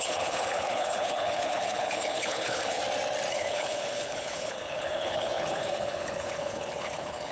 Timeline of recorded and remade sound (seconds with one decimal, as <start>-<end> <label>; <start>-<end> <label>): 0.0-2.8 remade; 2.8-3.3 recorded; 3.3-7.3 remade